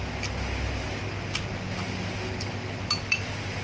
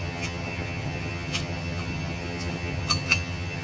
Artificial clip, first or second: second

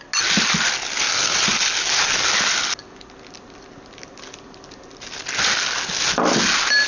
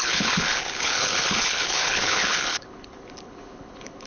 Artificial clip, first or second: second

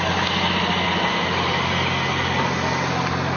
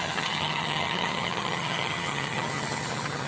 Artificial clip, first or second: second